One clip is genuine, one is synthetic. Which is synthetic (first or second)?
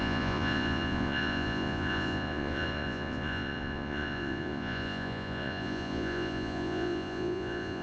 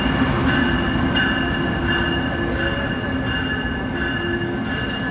first